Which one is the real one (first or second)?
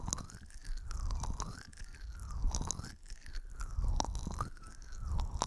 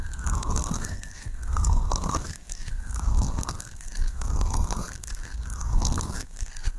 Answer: first